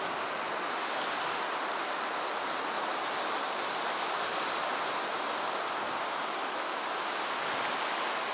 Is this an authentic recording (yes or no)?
yes